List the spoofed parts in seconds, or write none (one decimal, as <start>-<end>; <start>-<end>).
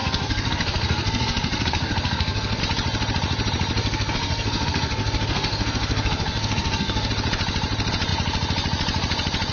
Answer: 0.0-2.6; 3.8-7.1